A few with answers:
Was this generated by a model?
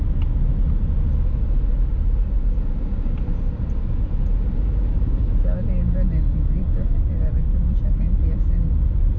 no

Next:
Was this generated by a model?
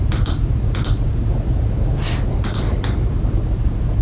no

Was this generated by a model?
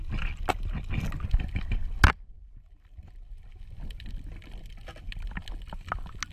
no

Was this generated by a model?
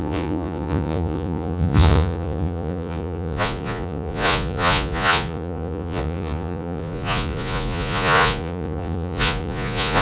yes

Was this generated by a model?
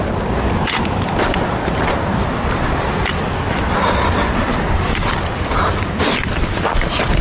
no